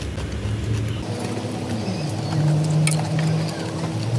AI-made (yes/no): no